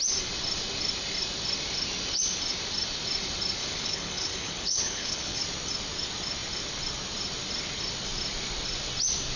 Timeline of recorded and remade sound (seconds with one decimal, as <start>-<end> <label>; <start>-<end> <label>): 0.0-3.6 recorded; 3.6-5.4 remade; 5.4-9.4 recorded